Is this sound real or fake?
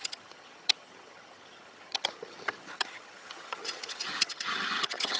fake